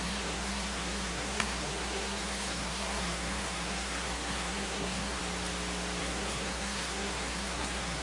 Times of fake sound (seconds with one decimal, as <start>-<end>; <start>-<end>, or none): 0.0-5.2; 6.0-8.0